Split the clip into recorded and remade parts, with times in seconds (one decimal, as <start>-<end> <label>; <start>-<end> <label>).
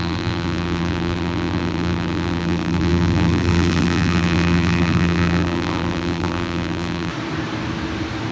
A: 0.0-7.1 remade; 7.1-8.3 recorded